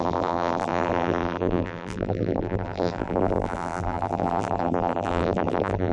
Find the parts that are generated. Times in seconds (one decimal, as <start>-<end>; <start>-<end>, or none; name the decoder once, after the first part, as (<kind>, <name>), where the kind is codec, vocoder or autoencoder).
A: 0.0-5.9 (vocoder, BigVGAN v2)